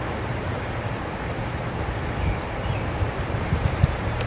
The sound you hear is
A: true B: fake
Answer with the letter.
B